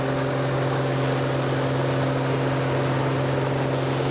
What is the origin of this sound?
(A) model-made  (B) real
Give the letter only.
B